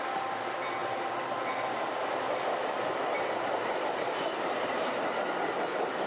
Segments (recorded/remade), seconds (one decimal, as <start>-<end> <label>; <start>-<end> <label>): 0.0-6.1 recorded